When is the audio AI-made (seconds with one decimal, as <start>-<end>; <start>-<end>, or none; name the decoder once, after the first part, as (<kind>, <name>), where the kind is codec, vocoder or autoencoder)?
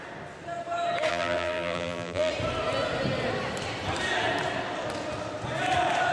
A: 1.1-2.3 (vocoder, BigVGAN v2)